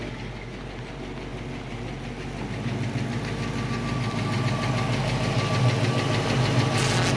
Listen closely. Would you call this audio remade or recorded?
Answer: recorded